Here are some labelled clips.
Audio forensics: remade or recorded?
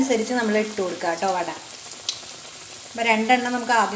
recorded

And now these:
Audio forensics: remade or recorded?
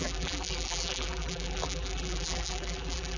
remade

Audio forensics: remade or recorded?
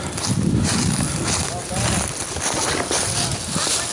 recorded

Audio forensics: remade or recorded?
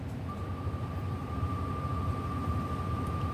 remade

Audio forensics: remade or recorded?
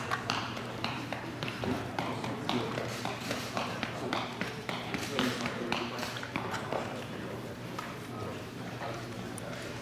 remade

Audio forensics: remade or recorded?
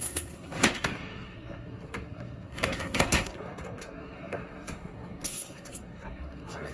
remade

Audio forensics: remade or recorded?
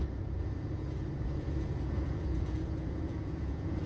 remade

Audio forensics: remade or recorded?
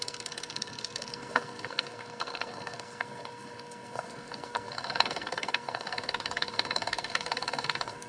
remade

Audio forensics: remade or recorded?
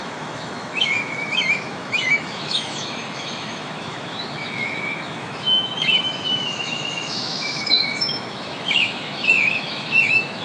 remade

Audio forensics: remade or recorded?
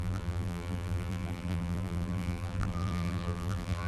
remade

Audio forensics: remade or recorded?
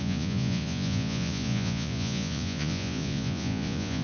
remade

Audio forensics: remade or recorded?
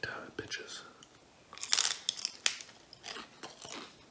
recorded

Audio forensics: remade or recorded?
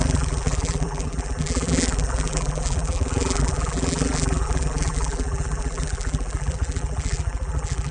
remade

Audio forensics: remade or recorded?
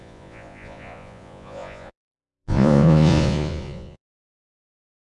remade